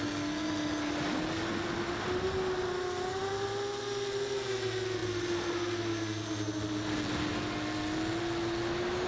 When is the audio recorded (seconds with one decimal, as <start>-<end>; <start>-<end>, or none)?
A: 0.0-9.1